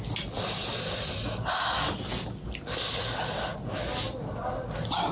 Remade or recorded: recorded